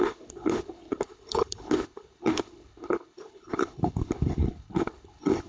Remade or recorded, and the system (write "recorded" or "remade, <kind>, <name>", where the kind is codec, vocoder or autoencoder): remade, codec, HILCodec